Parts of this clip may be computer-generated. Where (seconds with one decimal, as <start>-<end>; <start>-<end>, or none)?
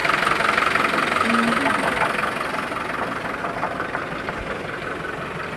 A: none